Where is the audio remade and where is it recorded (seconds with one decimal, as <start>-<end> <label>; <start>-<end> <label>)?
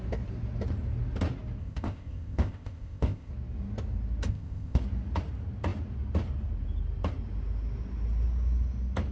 0.0-1.6 recorded; 1.6-3.3 remade; 3.3-4.3 recorded; 4.3-4.8 remade; 4.8-9.1 recorded